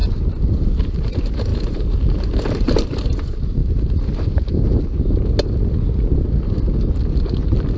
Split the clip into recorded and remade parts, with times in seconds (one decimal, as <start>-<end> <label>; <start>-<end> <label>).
0.0-0.9 recorded; 0.9-3.6 remade; 3.6-7.8 recorded